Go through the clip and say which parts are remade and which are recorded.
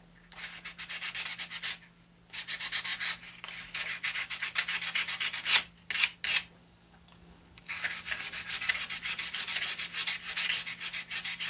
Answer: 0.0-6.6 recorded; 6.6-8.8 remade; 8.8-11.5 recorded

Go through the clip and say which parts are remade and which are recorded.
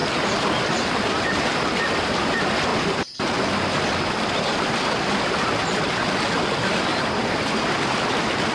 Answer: 0.0-2.7 recorded; 2.7-3.3 remade; 3.3-6.9 recorded; 6.9-7.8 remade; 7.8-8.5 recorded